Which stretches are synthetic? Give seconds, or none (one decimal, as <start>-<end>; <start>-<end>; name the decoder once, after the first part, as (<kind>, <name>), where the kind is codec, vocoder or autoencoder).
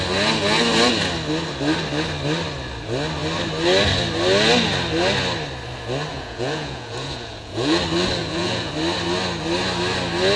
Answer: 6.1-7.8 (vocoder, Vocos); 8.2-8.7